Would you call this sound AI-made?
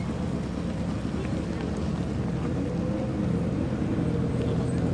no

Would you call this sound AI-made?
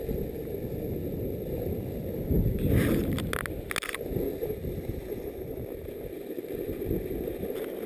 no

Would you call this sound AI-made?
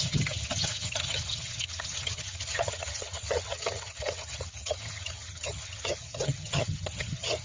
yes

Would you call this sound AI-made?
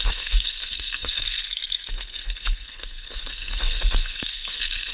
yes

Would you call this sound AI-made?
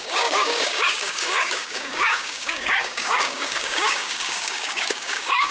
yes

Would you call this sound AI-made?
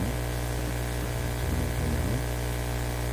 no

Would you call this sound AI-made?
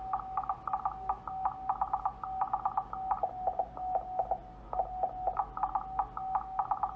no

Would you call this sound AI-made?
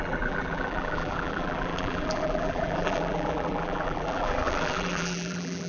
yes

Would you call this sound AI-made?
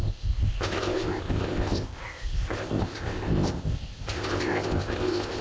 yes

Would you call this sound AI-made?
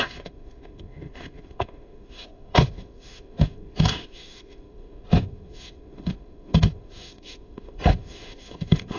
yes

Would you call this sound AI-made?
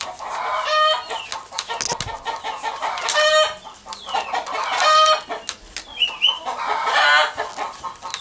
no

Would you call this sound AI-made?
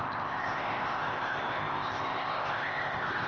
yes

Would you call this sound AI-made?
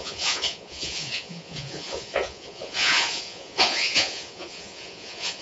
yes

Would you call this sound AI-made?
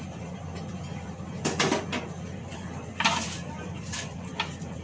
yes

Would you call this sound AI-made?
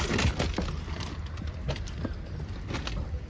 no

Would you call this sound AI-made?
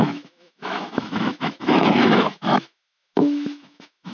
yes